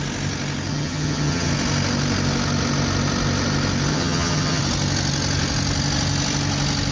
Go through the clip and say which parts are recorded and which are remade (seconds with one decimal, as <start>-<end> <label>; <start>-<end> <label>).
0.0-0.7 recorded; 0.7-1.5 remade; 1.5-3.9 recorded; 3.9-4.6 remade; 4.6-6.9 recorded

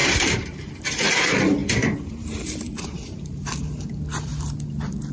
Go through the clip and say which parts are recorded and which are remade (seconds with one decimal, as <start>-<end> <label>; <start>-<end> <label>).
0.0-4.3 remade; 4.3-5.1 recorded